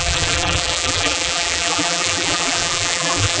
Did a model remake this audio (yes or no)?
yes